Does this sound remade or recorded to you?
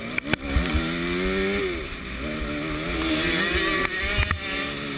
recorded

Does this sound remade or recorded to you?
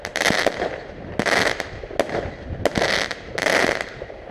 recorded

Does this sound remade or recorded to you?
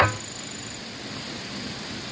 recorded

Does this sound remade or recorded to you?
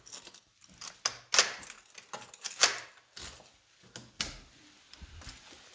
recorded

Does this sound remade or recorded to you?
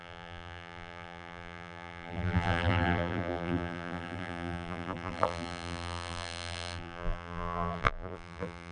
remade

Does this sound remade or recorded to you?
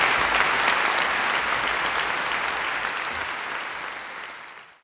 recorded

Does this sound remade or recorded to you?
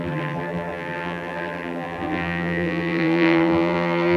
remade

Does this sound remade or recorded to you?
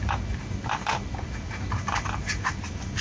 recorded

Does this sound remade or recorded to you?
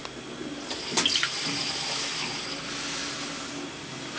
recorded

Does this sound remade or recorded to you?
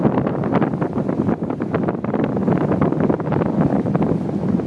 remade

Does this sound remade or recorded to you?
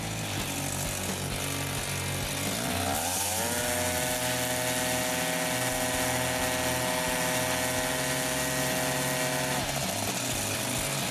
recorded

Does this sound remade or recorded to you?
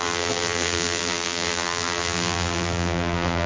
remade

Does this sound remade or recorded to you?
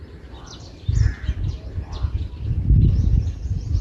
recorded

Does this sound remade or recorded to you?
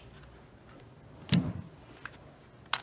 recorded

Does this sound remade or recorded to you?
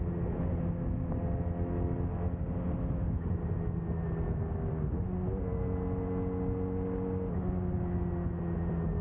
recorded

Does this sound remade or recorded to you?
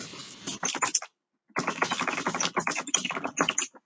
recorded